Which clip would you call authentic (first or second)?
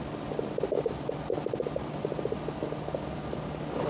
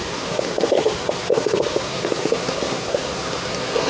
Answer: first